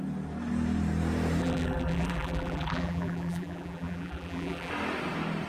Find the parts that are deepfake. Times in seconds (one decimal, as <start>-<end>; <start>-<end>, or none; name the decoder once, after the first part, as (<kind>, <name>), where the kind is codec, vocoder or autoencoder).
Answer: 1.4-4.7 (vocoder, BigVGAN v2)